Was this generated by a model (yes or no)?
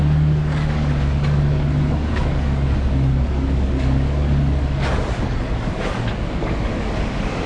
yes